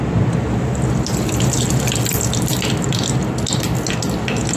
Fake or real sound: real